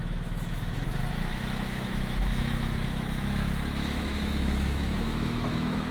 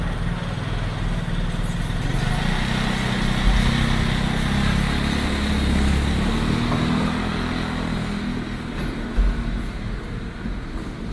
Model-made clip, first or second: first